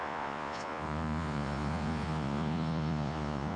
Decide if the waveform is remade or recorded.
remade